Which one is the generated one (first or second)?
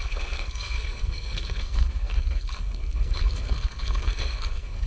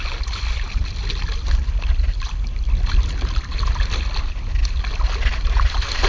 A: first